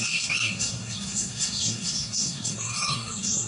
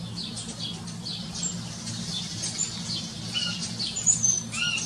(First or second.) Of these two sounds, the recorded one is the second